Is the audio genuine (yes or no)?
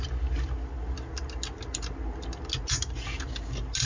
yes